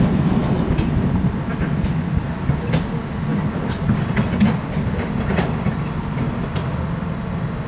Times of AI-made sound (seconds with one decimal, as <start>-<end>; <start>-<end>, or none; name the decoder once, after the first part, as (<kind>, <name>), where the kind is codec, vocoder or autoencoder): none